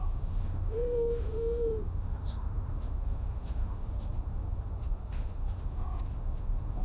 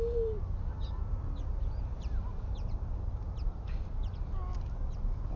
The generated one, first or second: first